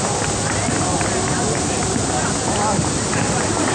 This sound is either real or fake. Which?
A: real